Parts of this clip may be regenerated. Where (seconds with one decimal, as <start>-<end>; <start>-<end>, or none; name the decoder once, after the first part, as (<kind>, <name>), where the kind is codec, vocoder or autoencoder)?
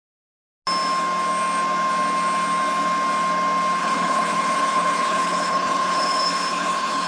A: 3.8-7.1 (codec, HILCodec)